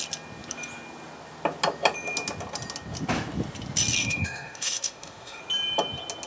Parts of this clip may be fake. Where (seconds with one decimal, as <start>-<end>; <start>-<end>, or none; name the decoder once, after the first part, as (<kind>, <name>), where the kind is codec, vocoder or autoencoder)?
4.0-5.4 (autoencoder, DAC-VAE)